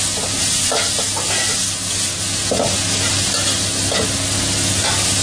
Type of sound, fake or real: real